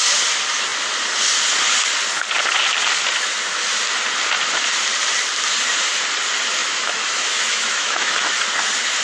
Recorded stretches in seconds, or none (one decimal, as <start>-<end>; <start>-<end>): 0.0-6.6; 8.3-9.0